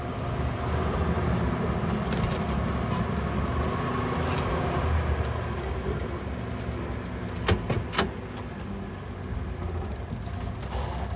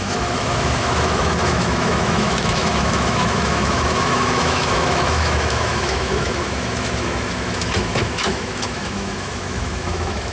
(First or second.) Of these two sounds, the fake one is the second